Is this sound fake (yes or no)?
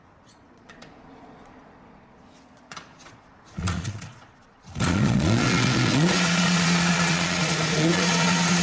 yes